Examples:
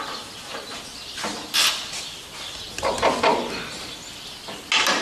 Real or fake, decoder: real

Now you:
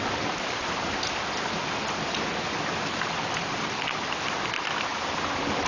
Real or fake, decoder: real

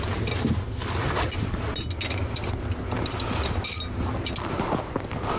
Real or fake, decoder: real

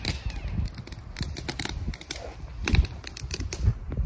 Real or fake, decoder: real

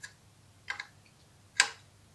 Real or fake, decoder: real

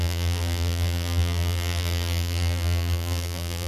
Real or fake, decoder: fake, vocoder, BigVGAN v2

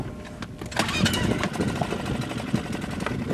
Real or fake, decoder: real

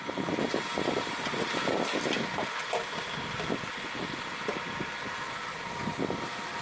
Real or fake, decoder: real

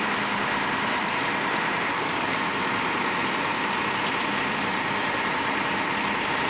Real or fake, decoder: fake, vocoder, BigVGAN v2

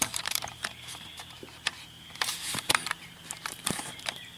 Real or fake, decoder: fake, vocoder, BigVGAN v2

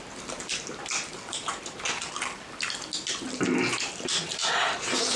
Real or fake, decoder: real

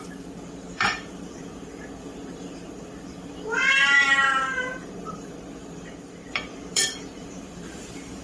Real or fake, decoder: fake, vocoder, BigVGAN v2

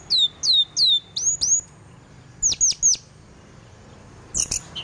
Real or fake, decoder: real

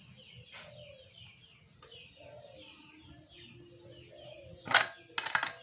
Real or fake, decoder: real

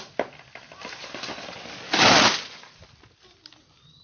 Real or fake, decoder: real